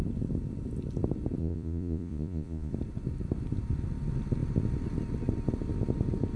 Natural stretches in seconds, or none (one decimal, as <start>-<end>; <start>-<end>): 0.0-1.4; 2.7-6.4